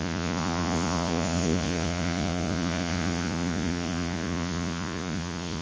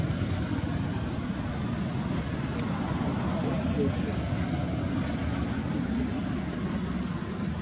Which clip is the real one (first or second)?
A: second